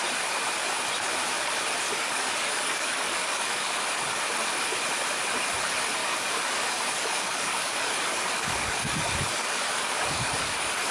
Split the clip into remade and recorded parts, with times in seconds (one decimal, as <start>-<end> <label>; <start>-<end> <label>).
0.0-1.9 recorded; 1.9-4.2 remade; 4.2-6.0 recorded; 6.0-10.9 remade